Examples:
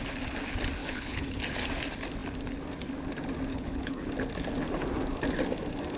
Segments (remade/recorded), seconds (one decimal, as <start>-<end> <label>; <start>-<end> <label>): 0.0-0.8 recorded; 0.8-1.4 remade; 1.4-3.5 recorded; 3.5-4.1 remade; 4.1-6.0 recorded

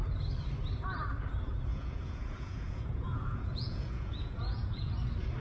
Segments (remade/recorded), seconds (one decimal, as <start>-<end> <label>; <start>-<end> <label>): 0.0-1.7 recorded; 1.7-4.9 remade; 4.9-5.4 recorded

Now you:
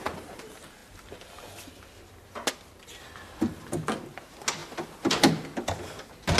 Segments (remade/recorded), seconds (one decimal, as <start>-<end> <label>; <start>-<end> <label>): 0.0-6.4 recorded

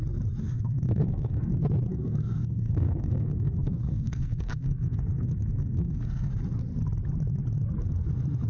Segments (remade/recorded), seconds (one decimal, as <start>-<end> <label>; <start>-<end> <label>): 0.0-0.4 recorded; 0.4-1.5 remade; 1.5-1.9 recorded; 1.9-6.3 remade; 6.3-8.5 recorded